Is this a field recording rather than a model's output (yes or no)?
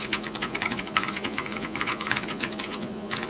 no